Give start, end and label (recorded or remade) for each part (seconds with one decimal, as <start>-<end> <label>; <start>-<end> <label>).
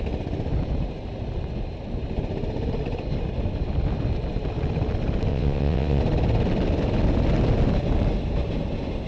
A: 0.0-5.3 recorded; 5.3-6.0 remade; 6.0-9.1 recorded